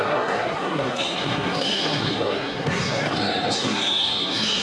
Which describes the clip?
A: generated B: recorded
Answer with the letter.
A